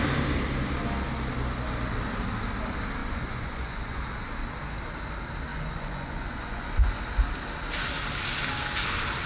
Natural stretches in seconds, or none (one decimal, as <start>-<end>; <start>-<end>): 0.0-3.0; 4.0-5.5; 7.0-9.3